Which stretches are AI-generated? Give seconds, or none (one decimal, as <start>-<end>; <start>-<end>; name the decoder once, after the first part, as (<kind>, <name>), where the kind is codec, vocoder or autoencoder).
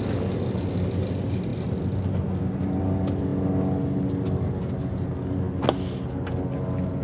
none